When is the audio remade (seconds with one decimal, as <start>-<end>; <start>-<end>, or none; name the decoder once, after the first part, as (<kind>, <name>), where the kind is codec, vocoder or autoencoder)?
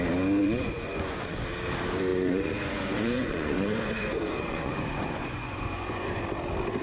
0.4-1.4 (vocoder, Vocos); 2.1-6.2